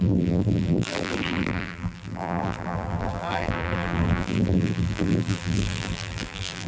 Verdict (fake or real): fake